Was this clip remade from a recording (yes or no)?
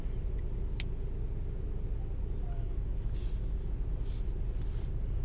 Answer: no